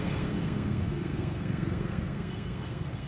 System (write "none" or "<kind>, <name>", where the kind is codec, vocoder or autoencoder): codec, SNAC